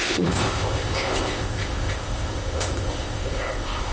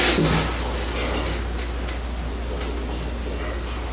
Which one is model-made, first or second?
first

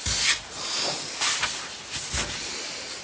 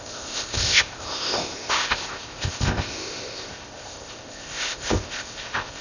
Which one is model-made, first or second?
second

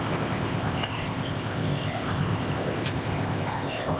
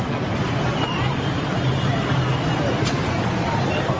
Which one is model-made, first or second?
first